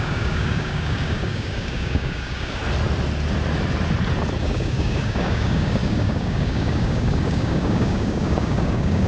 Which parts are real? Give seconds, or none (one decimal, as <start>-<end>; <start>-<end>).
2.6-4.4